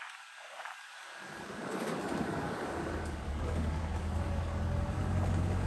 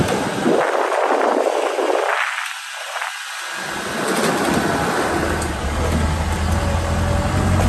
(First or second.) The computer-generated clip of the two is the first